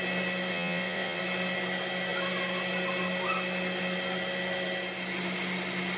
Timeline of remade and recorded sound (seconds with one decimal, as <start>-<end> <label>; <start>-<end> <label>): 0.0-0.5 recorded; 0.5-1.2 remade; 1.2-6.0 recorded